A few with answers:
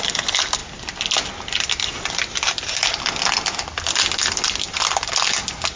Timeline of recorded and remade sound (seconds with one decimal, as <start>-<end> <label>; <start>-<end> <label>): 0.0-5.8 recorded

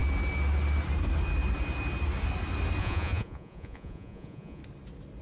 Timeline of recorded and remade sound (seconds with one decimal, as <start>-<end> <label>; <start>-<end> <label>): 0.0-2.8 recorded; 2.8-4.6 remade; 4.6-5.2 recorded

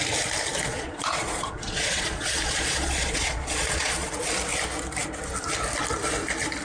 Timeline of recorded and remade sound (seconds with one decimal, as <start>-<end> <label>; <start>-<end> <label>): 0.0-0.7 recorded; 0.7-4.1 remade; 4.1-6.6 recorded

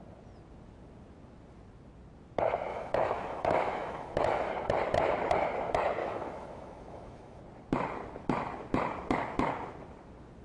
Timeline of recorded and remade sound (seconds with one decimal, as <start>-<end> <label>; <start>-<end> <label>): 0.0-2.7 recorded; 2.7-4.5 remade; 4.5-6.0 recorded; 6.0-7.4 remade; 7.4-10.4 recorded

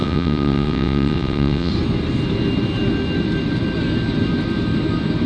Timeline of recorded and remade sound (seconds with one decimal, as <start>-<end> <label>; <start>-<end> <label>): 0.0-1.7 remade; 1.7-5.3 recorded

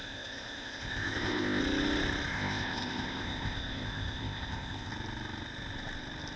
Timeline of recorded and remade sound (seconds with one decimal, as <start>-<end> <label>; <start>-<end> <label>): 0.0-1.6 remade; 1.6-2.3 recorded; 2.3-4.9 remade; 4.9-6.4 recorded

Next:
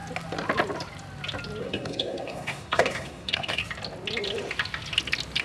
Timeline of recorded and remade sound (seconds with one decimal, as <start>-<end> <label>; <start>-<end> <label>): 0.0-1.6 recorded; 1.6-3.6 remade; 3.6-5.4 recorded